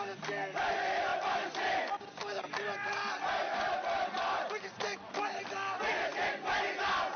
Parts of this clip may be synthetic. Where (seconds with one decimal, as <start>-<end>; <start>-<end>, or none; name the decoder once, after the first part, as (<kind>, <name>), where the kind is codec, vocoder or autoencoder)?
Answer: none